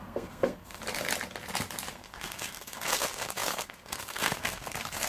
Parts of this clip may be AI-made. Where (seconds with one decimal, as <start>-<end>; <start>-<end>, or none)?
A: 0.0-0.8; 1.9-5.1